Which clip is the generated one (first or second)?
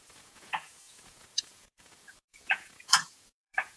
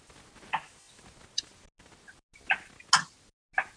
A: first